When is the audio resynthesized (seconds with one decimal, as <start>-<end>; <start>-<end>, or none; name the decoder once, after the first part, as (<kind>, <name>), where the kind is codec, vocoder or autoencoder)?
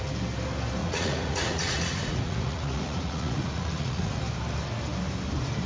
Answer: 0.8-4.2 (vocoder, Vocos)